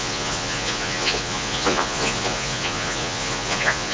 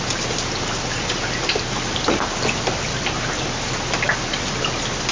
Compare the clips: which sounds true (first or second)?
second